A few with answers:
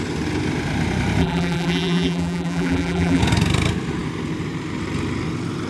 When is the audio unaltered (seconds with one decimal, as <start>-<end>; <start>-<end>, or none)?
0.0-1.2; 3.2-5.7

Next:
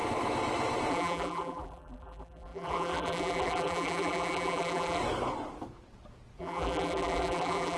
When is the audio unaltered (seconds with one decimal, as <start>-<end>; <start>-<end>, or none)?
0.0-0.9; 5.0-6.4

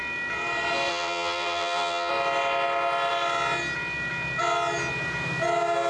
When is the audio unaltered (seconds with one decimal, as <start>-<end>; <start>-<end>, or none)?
0.0-0.9; 2.1-5.9